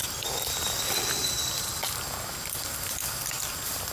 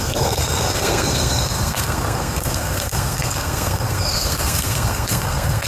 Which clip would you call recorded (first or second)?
first